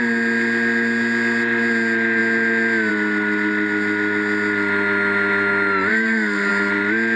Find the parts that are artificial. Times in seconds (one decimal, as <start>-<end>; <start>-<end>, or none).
5.9-6.5